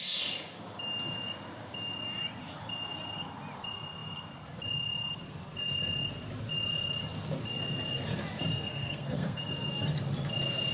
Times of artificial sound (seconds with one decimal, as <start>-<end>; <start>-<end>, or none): 8.5-9.5